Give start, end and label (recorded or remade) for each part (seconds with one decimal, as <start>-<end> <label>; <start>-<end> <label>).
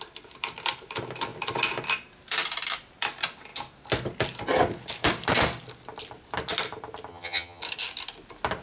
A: 0.0-7.1 recorded; 7.1-7.6 remade; 7.6-8.6 recorded